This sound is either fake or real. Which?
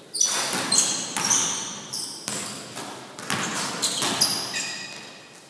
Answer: real